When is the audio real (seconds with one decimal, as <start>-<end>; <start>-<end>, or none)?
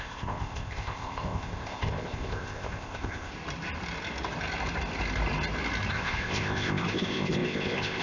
3.3-5.9